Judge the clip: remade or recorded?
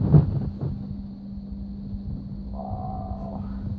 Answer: recorded